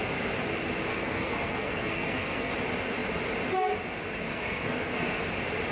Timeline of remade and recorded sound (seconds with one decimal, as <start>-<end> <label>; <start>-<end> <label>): 0.0-0.9 recorded; 0.9-2.5 remade; 2.5-4.3 recorded; 4.3-5.2 remade; 5.2-5.7 recorded